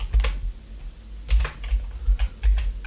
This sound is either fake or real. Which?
real